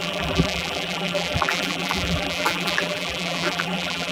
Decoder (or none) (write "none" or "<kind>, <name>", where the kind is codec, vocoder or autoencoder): vocoder, BigVGAN v2